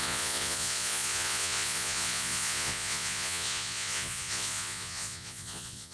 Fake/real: fake